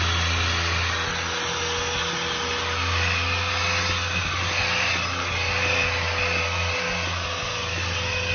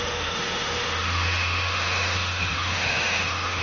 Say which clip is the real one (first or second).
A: first